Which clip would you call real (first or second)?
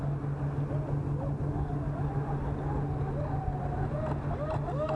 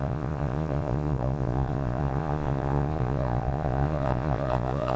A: first